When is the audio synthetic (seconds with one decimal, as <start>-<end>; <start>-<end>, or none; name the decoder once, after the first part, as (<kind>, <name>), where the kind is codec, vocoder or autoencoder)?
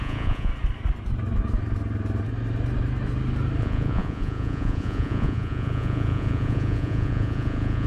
0.0-0.5 (vocoder, Vocos); 3.6-7.9